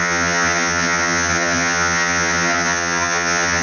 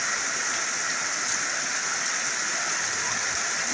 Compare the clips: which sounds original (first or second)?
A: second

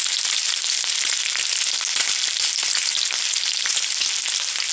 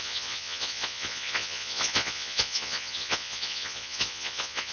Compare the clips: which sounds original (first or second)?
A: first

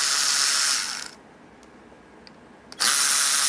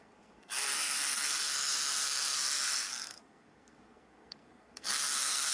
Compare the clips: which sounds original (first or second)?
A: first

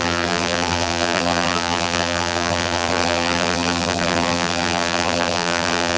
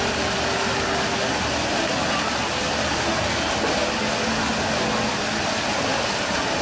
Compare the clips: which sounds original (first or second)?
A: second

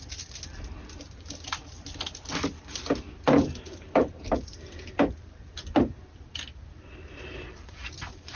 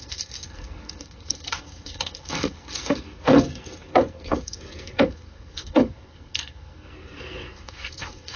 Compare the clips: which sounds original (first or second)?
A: first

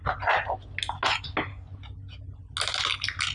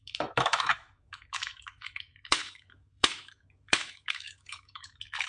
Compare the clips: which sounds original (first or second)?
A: first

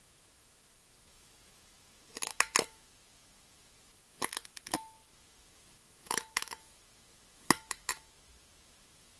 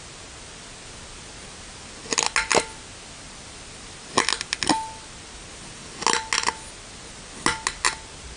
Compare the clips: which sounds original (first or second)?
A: second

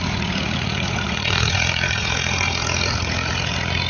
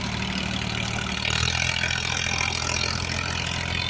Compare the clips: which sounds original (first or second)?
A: second